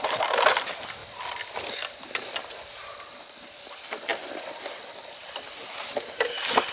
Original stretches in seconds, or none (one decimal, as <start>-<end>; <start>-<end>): 0.0-4.1; 4.6-5.2; 5.7-6.7